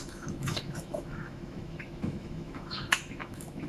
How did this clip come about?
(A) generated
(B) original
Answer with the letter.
A